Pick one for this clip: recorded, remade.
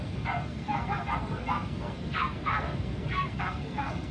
remade